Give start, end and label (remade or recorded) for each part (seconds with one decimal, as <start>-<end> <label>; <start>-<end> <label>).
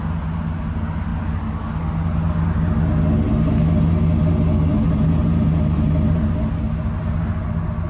0.0-4.7 recorded; 4.7-6.3 remade; 6.3-7.9 recorded